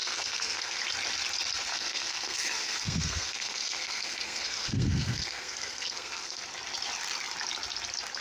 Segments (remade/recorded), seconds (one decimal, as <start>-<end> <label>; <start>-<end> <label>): 0.0-0.8 remade; 0.8-1.7 recorded; 1.7-6.4 remade; 6.4-8.2 recorded

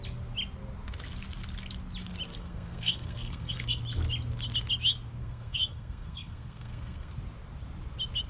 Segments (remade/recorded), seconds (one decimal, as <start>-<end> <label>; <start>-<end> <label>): 0.0-2.3 recorded; 2.3-3.8 remade; 3.8-5.2 recorded; 5.2-7.1 remade; 7.1-8.3 recorded

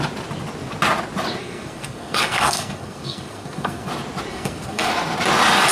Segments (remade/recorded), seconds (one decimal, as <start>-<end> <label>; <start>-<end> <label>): 0.0-1.4 recorded; 1.4-3.9 remade; 3.9-4.3 recorded; 4.3-4.9 remade; 4.9-5.7 recorded

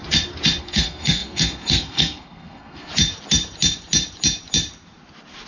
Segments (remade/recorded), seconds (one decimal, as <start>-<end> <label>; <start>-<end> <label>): 0.0-0.6 recorded; 0.6-2.9 remade; 2.9-5.5 recorded

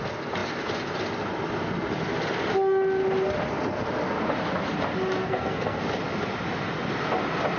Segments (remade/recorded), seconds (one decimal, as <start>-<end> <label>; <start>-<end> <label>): 0.0-5.2 recorded; 5.2-5.8 remade; 5.8-7.6 recorded